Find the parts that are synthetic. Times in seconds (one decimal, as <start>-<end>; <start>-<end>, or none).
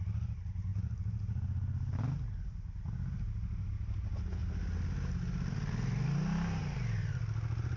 none